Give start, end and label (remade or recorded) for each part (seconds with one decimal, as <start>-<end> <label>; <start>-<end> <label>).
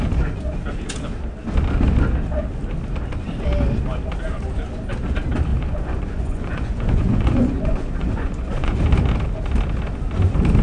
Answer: 0.0-5.5 recorded; 5.5-8.8 remade; 8.8-10.6 recorded